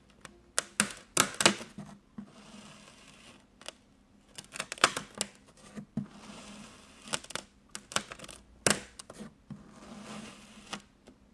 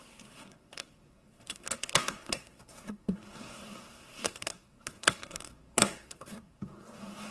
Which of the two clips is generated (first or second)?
second